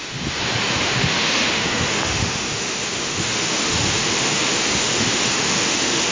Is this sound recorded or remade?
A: remade